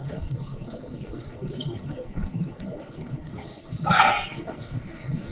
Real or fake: fake